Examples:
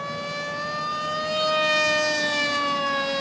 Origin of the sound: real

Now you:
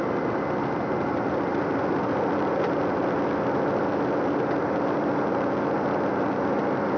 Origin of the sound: real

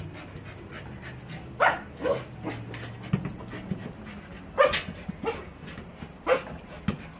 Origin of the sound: real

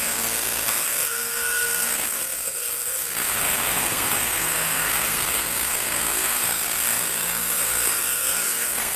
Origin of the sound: fake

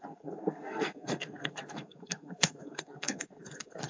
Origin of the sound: fake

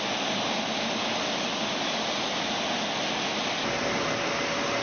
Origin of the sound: real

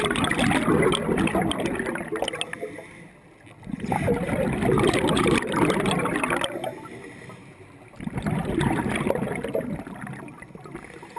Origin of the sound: real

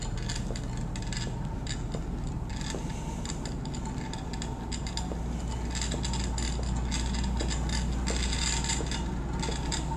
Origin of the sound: real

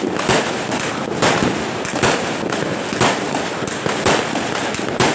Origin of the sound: real